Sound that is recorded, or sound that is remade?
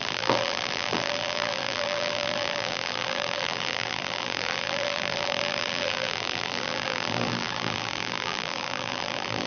remade